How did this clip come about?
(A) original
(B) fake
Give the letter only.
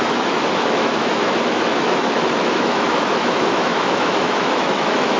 B